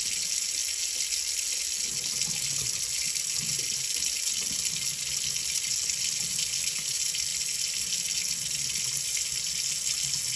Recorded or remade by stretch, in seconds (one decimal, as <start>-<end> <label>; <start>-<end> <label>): 0.0-10.4 recorded